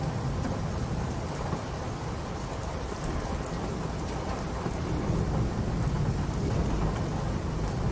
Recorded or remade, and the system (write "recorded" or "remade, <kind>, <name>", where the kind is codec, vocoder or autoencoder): recorded